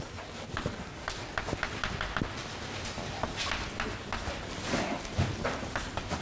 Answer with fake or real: real